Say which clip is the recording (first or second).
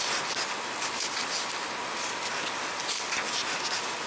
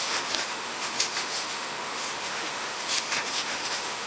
first